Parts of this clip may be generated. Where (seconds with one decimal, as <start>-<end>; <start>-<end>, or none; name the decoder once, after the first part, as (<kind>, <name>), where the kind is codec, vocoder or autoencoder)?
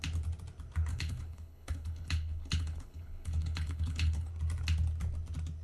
0.9-4.3 (codec, HILCodec)